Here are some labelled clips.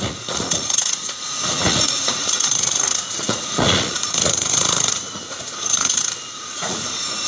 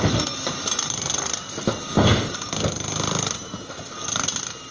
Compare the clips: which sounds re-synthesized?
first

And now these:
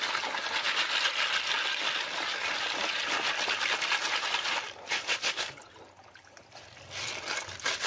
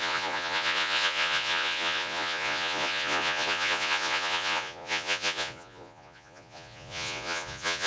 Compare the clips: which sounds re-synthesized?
second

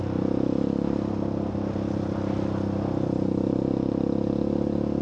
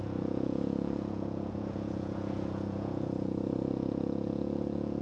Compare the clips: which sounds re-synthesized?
second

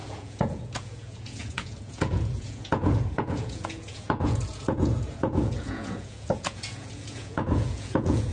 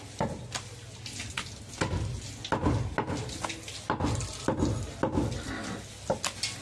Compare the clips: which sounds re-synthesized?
first